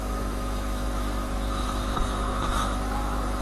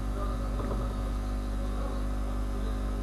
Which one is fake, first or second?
first